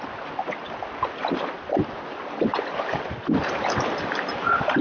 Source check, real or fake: real